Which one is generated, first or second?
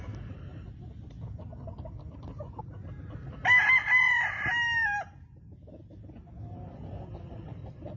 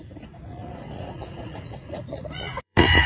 second